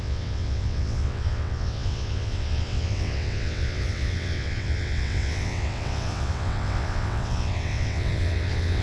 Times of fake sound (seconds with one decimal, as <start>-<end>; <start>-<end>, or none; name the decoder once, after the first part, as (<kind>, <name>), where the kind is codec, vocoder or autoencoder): 0.0-8.8 (vocoder, WaveNeXt)